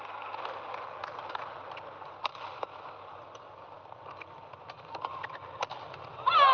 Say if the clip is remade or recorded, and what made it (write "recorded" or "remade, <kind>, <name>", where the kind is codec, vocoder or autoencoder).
recorded